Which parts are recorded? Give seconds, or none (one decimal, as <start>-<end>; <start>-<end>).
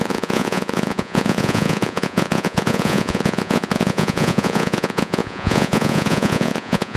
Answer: none